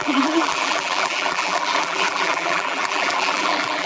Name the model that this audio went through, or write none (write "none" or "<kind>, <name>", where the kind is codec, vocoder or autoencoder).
vocoder, BigVGAN v2